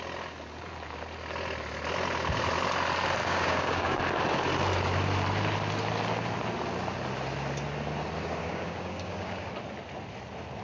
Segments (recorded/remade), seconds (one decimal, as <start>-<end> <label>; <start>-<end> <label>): 0.0-3.2 recorded; 3.2-4.0 remade; 4.0-8.4 recorded; 8.4-9.4 remade; 9.4-10.6 recorded

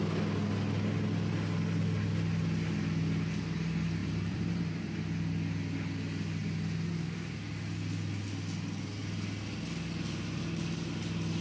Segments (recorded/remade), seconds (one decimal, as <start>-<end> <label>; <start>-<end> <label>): 0.0-4.0 recorded; 4.0-5.0 remade; 5.0-11.4 recorded

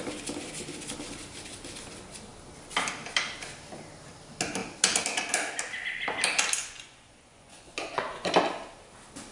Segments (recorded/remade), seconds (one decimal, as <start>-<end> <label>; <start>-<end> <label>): 0.0-6.6 recorded; 6.6-8.3 remade; 8.3-9.3 recorded

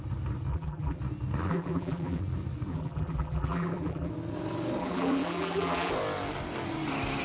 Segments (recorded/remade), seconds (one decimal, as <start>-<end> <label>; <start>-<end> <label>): 0.0-0.5 recorded; 0.5-1.0 remade; 1.0-1.5 recorded; 1.5-2.2 remade; 2.2-2.7 recorded; 2.7-4.1 remade; 4.1-4.8 recorded; 4.8-5.9 remade; 5.9-7.2 recorded

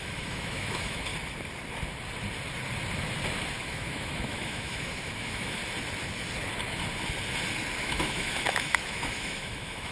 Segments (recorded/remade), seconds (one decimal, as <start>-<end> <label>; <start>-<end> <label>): 0.0-1.1 remade; 1.1-3.6 recorded; 3.6-5.6 remade; 5.6-7.8 recorded; 7.8-9.9 remade

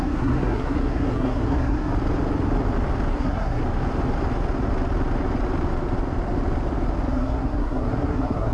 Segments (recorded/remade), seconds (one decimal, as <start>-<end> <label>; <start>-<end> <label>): 0.0-1.9 remade; 1.9-3.1 recorded; 3.1-3.6 remade; 3.6-7.1 recorded; 7.1-8.5 remade

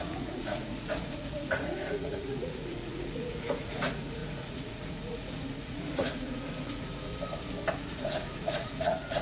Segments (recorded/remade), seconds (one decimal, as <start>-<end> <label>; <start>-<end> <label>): 0.0-7.1 remade; 7.1-7.7 recorded; 7.7-9.2 remade

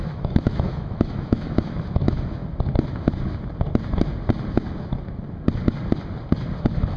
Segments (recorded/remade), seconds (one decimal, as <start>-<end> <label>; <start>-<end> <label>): 0.0-2.4 remade; 2.4-6.6 recorded; 6.6-7.0 remade